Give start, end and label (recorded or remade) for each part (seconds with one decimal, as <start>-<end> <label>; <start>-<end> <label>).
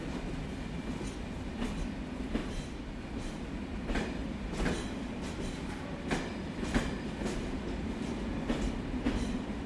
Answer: 0.0-9.7 remade